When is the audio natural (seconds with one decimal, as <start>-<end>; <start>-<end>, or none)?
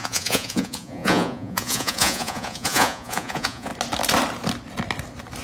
3.7-5.4